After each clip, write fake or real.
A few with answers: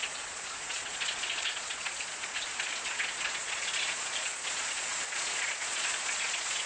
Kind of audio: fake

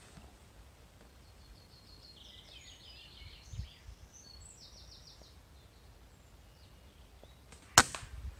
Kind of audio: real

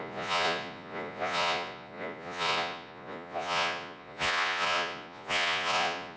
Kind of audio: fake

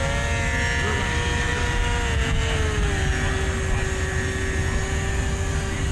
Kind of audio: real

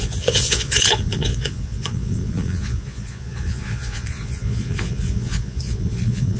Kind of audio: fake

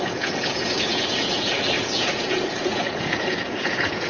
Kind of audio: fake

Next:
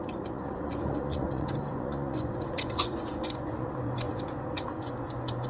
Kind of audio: fake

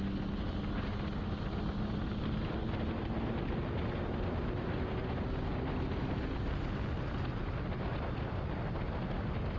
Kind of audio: real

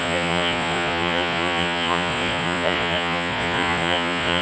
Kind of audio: fake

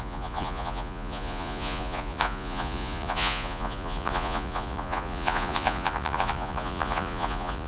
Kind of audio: fake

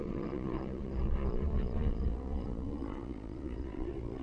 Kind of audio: fake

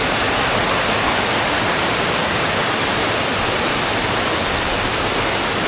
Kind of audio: real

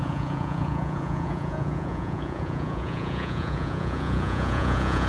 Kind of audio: fake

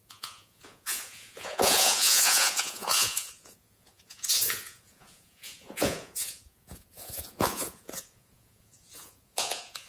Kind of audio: fake